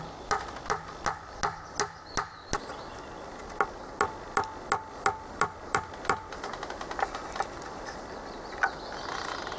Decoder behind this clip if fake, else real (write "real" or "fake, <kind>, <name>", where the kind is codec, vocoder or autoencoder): real